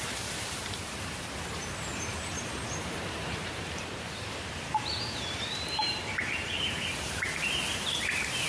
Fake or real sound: fake